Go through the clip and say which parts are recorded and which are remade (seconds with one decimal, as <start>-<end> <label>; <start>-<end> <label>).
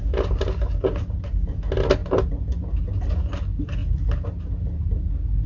0.0-5.5 recorded